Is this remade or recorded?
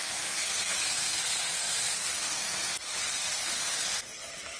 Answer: remade